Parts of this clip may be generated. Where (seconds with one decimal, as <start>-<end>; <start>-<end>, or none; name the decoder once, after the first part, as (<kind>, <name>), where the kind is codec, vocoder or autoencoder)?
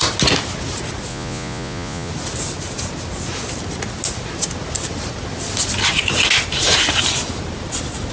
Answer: 1.1-2.1 (vocoder, Vocos)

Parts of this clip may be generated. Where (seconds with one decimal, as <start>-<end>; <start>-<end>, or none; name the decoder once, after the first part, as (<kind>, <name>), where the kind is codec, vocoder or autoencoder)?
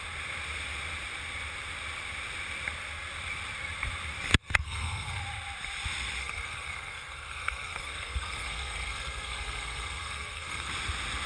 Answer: 4.3-5.2 (codec, SNAC); 6.2-10.7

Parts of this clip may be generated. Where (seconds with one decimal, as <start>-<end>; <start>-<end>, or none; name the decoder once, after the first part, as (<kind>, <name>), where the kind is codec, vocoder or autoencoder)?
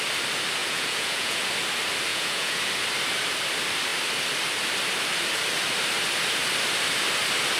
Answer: 0.6-1.4 (vocoder, Vocos); 2.1-2.6